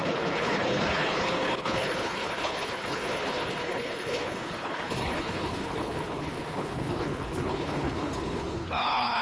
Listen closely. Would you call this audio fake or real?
fake